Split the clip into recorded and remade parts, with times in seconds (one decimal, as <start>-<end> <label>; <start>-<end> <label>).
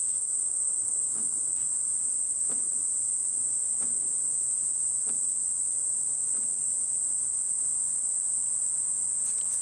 0.0-1.7 remade; 1.7-3.6 recorded; 3.6-4.1 remade; 4.1-9.6 recorded